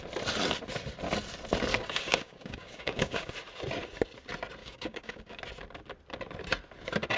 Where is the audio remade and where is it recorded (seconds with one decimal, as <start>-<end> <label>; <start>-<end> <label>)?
0.0-1.7 recorded; 1.7-3.3 remade; 3.3-4.6 recorded; 4.6-5.4 remade; 5.4-7.2 recorded